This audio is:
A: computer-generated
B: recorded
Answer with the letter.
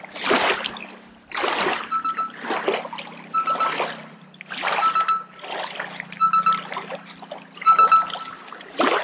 B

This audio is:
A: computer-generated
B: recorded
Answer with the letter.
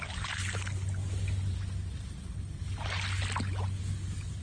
B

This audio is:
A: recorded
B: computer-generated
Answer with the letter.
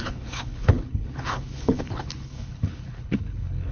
B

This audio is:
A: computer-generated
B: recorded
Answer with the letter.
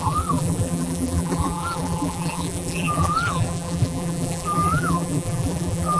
A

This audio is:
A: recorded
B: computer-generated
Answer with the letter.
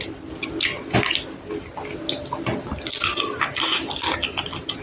A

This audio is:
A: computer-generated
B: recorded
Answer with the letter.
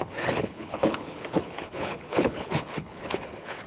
A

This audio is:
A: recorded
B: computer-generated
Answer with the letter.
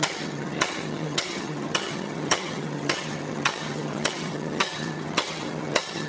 B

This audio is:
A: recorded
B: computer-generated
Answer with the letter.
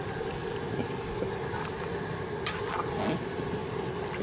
A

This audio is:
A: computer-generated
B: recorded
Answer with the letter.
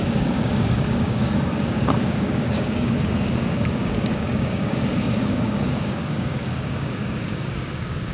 A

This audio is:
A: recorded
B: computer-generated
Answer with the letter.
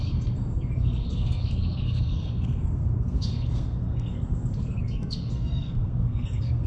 B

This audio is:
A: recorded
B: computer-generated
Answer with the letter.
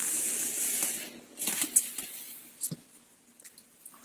A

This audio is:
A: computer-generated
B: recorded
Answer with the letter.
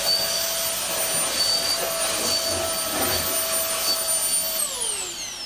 B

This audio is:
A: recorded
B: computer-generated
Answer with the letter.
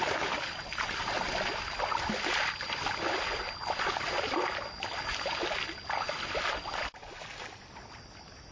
A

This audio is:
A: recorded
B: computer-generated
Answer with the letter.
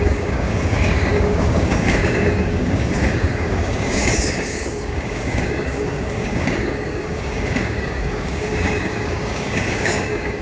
B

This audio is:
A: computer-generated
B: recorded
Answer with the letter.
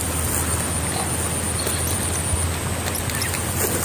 B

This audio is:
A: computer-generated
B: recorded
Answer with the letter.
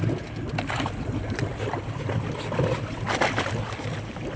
B